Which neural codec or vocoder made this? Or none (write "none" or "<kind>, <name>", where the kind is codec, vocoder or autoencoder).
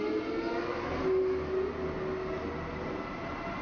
none